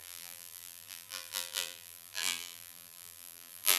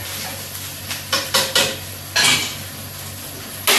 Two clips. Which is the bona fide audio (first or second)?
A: second